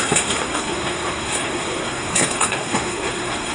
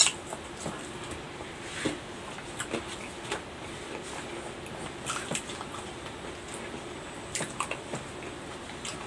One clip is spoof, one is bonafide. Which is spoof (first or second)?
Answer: first